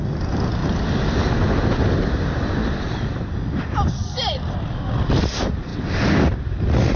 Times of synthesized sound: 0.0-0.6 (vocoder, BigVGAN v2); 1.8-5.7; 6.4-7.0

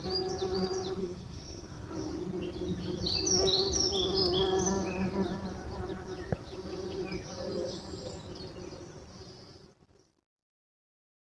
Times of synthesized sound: 1.0-1.9 (codec, SNAC)